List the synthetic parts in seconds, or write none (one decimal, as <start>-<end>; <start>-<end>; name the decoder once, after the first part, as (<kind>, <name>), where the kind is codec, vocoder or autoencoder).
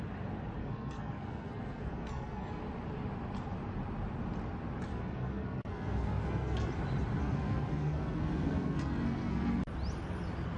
0.6-2.6 (codec, SNAC); 4.9-6.7; 7.2-9.6